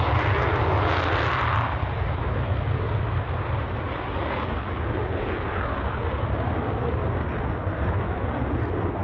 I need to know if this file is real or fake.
real